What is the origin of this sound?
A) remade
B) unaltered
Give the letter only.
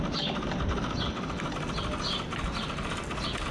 B